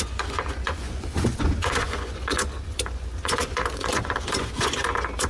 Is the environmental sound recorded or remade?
remade